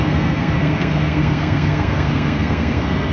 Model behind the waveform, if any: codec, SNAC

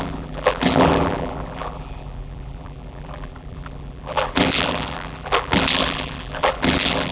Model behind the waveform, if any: vocoder, BigVGAN v2